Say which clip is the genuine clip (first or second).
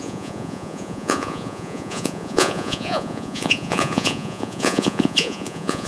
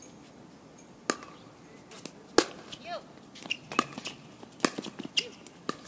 second